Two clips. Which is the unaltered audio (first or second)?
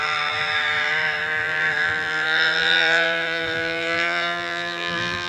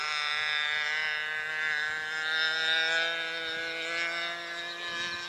second